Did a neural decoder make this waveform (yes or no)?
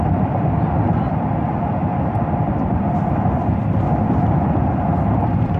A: yes